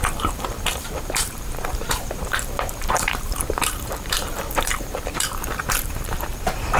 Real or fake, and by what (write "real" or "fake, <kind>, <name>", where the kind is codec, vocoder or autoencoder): fake, vocoder, BigVGAN v2